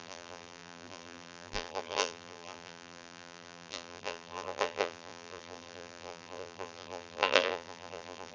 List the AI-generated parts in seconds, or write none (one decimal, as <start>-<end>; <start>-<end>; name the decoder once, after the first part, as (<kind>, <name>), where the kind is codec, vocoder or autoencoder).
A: 0.0-8.3 (vocoder, BigVGAN v2)